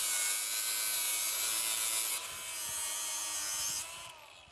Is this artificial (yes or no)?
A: no